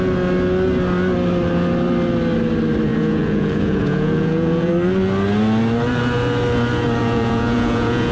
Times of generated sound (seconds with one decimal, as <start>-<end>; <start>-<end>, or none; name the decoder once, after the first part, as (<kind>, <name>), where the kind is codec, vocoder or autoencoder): 2.9-4.7 (vocoder, Vocos); 7.0-8.1